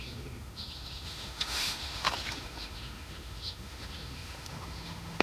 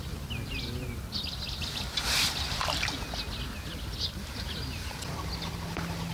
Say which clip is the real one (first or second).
second